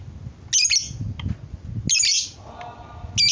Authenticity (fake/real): real